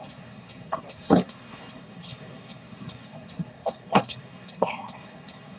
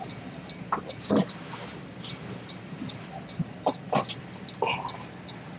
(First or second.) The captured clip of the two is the second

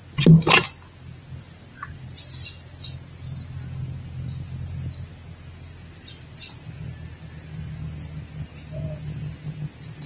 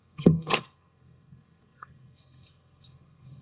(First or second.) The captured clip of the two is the first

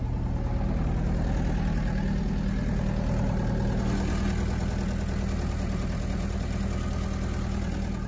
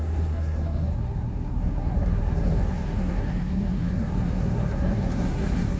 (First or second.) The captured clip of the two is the first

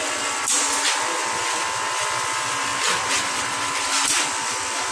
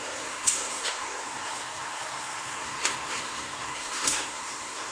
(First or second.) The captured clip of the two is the first